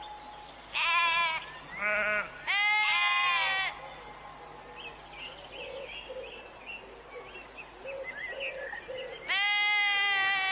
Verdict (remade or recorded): recorded